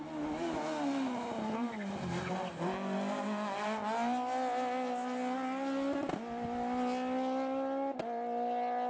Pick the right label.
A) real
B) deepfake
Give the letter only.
A